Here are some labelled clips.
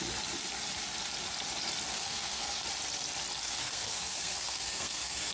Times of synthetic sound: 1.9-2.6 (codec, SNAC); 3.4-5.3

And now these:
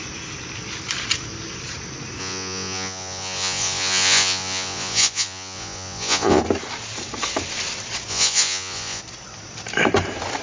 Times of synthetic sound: 2.2-6.4 (vocoder, Vocos); 8.1-9.0

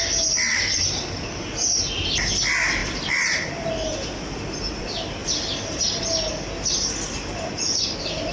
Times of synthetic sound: 2.8-3.5 (vocoder, BigVGAN v2); 5.2-6.0